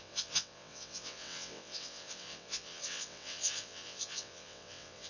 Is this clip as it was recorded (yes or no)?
no